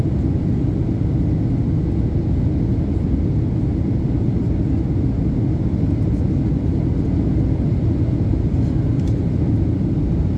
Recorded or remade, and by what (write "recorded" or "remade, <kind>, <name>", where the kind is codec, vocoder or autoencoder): recorded